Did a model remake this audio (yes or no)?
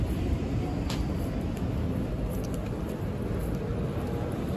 no